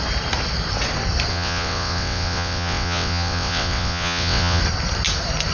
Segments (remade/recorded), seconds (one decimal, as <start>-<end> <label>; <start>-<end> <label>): 0.0-1.3 recorded; 1.3-4.6 remade; 4.6-5.5 recorded

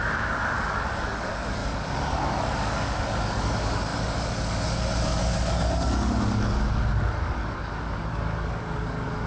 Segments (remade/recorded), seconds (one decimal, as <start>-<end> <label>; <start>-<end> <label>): 0.0-9.3 remade

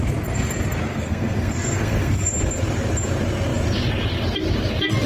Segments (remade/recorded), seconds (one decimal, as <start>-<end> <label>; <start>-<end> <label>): 0.0-0.9 recorded; 0.9-2.3 remade; 2.3-5.1 recorded